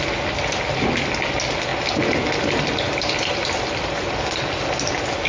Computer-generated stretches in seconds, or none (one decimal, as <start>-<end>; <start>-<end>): none